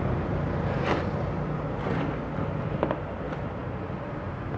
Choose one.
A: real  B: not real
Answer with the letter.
A